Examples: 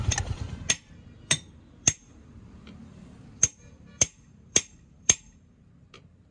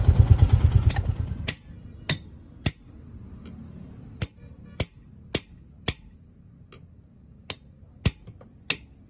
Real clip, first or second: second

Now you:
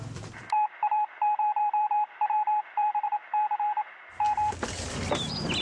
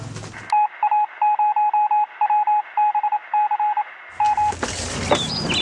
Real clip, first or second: second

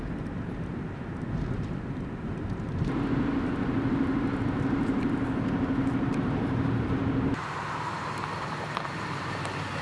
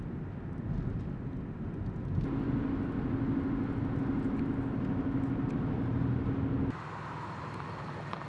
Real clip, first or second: second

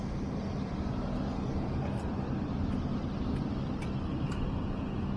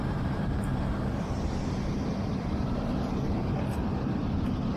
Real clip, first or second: first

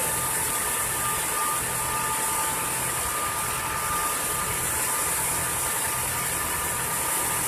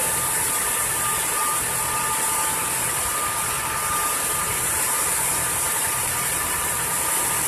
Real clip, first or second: first